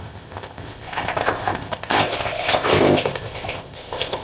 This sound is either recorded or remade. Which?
remade